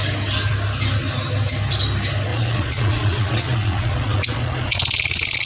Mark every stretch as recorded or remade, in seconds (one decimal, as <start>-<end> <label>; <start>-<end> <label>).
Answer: 0.0-2.3 recorded; 2.3-5.5 remade